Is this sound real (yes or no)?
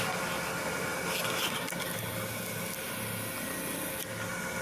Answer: yes